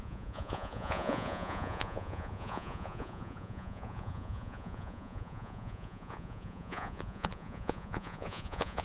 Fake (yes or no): yes